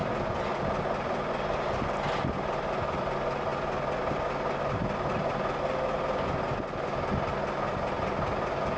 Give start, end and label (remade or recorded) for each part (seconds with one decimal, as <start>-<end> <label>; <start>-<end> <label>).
0.0-8.8 recorded

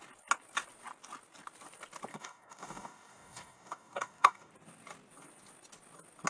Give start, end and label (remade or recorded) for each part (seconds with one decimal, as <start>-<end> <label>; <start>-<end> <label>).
0.0-2.1 recorded; 2.1-4.5 remade; 4.5-6.3 recorded

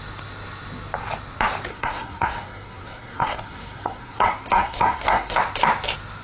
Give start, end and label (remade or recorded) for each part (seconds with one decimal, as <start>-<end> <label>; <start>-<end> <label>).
0.0-1.7 recorded; 1.7-5.4 remade; 5.4-6.2 recorded

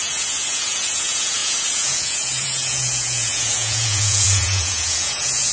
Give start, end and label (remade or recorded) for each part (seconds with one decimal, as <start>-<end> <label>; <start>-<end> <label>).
0.0-5.5 remade

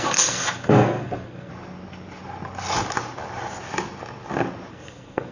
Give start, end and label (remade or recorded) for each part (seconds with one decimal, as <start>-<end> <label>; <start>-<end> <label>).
0.0-1.5 remade; 1.5-4.7 recorded; 4.7-5.3 remade

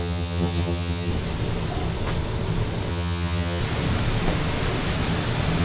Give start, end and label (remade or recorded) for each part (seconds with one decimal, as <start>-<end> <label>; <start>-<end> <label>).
0.0-1.1 remade; 1.1-2.9 recorded; 2.9-3.6 remade; 3.6-5.6 recorded

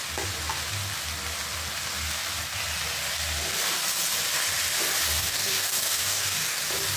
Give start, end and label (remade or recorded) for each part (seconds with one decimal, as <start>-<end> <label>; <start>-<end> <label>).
0.0-5.2 recorded; 5.2-6.6 remade; 6.6-7.0 recorded